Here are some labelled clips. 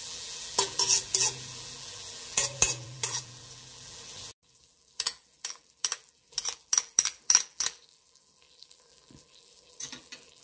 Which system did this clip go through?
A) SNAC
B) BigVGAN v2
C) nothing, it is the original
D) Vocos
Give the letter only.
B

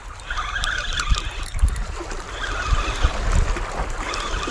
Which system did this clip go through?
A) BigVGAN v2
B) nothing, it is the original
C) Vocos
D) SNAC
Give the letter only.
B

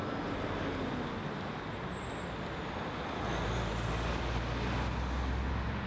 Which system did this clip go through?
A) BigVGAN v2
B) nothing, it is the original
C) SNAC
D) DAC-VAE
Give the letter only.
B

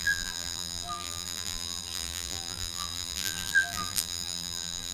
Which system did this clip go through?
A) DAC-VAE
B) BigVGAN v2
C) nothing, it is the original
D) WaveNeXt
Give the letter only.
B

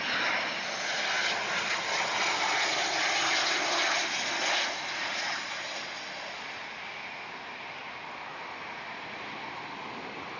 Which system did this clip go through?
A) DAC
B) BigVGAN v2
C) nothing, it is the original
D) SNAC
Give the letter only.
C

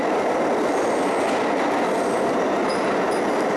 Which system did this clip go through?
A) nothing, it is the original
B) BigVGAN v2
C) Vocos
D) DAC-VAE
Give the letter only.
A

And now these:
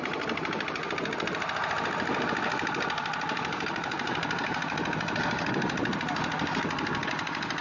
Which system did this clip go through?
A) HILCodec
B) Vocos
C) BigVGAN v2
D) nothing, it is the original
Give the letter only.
C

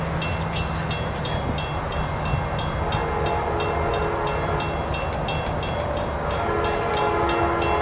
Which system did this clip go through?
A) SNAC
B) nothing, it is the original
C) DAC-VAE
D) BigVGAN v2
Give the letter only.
B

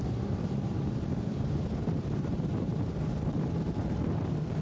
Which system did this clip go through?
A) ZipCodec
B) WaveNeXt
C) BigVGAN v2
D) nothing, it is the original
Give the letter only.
C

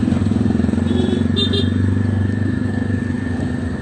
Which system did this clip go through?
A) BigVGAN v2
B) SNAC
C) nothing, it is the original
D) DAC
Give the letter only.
C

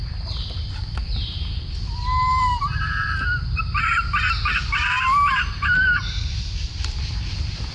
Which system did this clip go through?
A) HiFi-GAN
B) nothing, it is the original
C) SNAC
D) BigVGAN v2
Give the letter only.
D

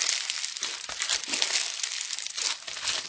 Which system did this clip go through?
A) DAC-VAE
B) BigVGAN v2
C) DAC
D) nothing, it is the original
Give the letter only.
D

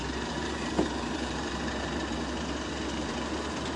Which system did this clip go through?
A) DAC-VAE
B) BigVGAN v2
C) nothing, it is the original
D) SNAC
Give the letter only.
B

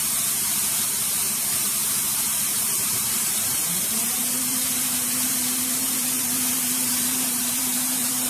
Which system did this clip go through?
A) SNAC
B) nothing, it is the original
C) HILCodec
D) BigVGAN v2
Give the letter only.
D